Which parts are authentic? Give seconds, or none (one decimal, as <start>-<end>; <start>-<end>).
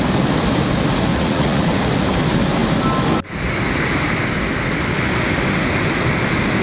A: 0.0-1.1; 1.9-6.6